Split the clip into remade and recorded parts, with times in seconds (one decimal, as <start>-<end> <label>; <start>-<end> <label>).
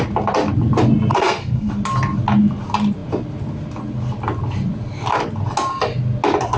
0.0-1.1 recorded; 1.1-1.7 remade; 1.7-6.6 recorded